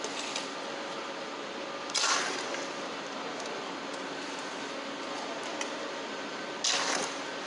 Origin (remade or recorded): recorded